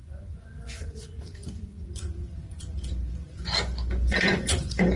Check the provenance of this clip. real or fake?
fake